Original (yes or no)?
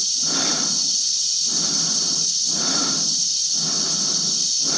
yes